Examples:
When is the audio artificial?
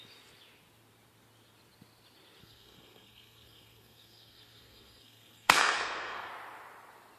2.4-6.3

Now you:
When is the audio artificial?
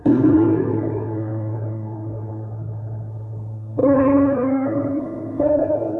0.0-6.0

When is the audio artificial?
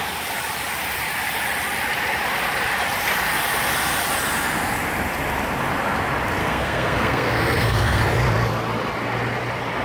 6.4-8.0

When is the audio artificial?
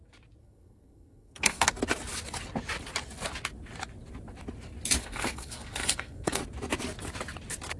0.4-1.7; 5.0-6.4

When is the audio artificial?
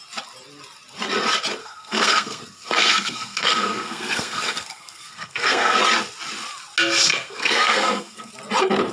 1.6-5.8; 7.1-8.3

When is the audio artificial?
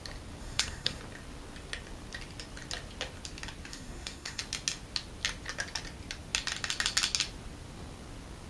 0.4-1.0; 3.7-4.4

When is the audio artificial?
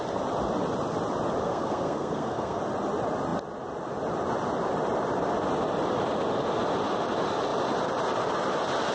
1.4-2.6